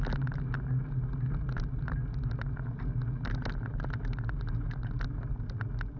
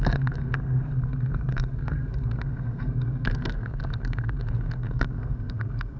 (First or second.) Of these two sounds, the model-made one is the second